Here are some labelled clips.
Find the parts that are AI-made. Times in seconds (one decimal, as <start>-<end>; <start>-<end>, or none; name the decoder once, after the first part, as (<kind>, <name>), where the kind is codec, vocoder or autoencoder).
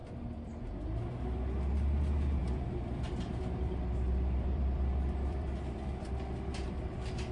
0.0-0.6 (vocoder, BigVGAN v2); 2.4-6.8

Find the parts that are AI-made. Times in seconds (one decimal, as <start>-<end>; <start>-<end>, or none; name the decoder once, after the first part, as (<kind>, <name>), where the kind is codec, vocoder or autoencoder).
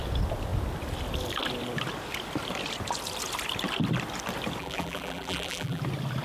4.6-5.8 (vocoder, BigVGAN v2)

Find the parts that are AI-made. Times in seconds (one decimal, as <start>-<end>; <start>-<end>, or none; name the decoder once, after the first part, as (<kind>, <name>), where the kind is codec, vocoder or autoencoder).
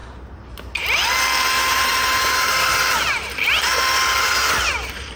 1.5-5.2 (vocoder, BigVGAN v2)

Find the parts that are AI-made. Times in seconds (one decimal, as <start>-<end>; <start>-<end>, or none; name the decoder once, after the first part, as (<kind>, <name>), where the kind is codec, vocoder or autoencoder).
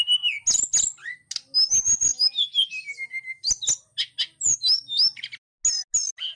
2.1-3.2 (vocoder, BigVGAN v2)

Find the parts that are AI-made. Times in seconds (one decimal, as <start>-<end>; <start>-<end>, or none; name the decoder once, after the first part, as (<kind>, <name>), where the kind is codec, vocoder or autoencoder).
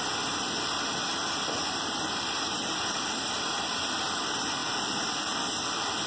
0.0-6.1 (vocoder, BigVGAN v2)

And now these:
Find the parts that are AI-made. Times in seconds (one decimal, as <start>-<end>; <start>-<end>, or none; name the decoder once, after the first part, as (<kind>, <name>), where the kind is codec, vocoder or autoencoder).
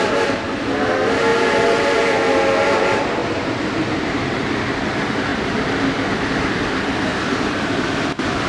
1.3-2.0 (vocoder, BigVGAN v2); 3.2-4.5; 7.1-7.8